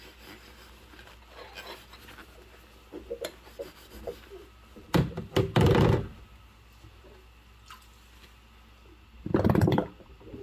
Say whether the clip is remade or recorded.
recorded